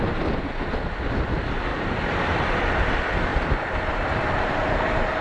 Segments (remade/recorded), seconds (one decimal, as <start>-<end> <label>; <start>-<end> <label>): 0.0-1.7 recorded; 1.7-2.6 remade; 2.6-3.3 recorded; 3.3-5.2 remade